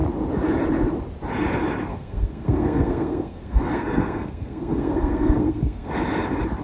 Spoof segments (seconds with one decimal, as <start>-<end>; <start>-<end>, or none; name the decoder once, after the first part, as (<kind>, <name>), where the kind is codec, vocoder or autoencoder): 1.9-5.9 (codec, SNAC)